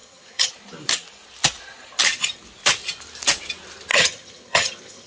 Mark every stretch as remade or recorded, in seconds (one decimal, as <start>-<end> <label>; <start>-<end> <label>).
0.0-0.5 remade; 0.5-3.9 recorded; 3.9-5.1 remade